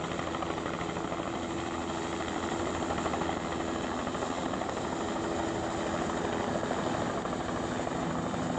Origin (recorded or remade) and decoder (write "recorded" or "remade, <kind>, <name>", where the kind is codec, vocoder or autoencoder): recorded